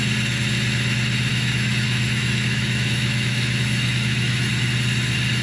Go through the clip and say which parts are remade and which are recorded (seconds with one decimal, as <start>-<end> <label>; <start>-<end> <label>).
0.0-1.3 recorded; 1.3-4.5 remade; 4.5-5.4 recorded